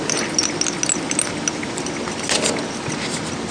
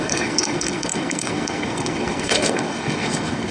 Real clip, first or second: first